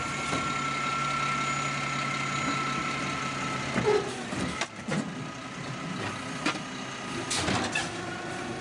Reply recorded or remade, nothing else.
recorded